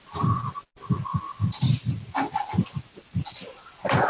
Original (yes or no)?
yes